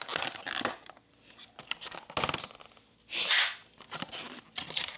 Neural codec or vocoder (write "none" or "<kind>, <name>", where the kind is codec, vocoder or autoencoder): none